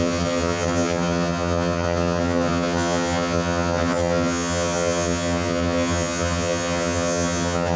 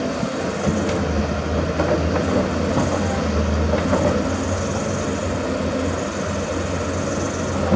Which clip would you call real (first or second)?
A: second